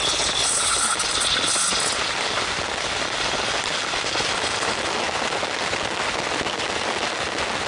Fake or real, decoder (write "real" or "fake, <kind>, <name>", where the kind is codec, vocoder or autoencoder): real